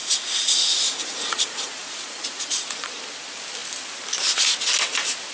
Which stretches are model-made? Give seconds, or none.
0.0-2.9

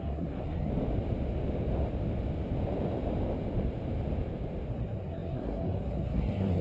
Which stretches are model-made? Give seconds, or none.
0.0-0.7; 4.7-6.6

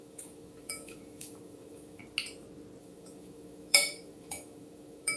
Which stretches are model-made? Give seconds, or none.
0.0-2.0; 2.8-5.2

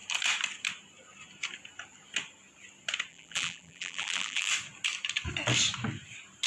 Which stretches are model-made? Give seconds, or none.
3.1-4.5

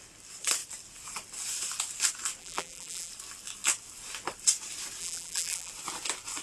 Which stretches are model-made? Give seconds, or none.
2.4-3.1; 5.0-5.7

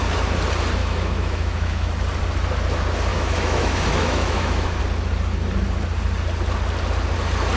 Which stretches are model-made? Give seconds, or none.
0.8-1.9; 3.1-4.8

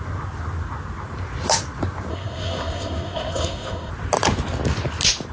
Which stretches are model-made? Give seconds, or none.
2.1-3.9

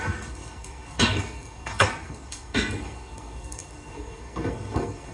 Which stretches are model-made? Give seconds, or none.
0.0-5.1